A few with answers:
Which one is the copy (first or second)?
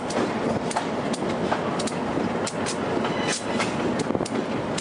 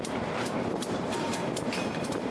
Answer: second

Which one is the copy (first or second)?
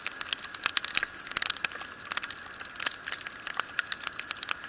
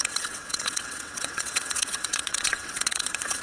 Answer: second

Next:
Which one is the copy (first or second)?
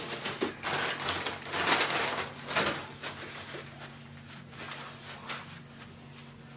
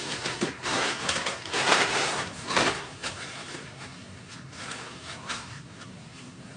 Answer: second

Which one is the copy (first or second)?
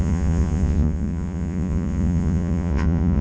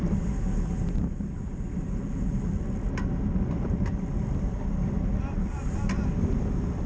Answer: first